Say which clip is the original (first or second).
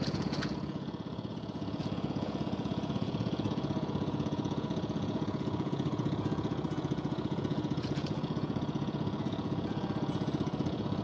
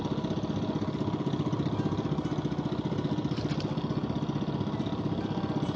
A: second